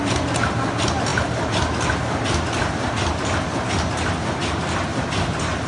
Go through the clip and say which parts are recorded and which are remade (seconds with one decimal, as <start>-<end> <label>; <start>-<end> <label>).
0.0-5.7 recorded